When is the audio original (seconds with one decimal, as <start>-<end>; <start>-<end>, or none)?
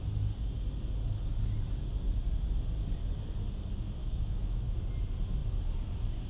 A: 0.0-4.0; 4.8-6.3